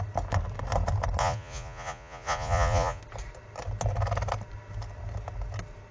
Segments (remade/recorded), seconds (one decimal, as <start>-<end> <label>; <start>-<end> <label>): 0.0-1.2 recorded; 1.2-3.0 remade; 3.0-5.9 recorded